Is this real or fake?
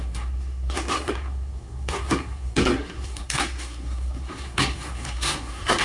fake